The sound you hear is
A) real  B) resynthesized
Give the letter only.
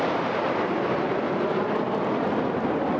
A